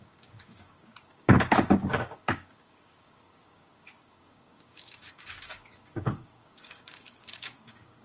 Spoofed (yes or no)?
yes